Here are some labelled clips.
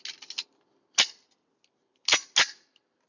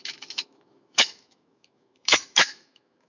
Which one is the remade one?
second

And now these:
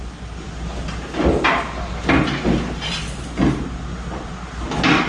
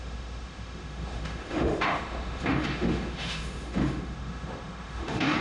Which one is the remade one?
second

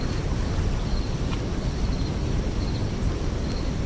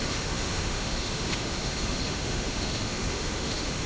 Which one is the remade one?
second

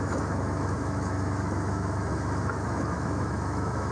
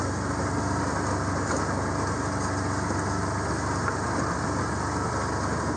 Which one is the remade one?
first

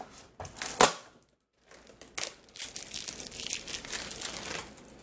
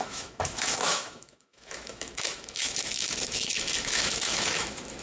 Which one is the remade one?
second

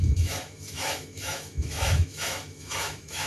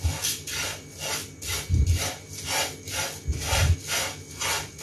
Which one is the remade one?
first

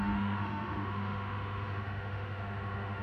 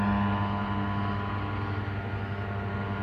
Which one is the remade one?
first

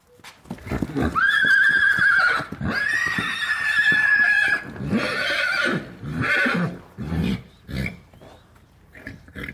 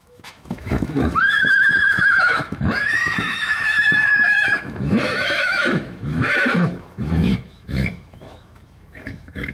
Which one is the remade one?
second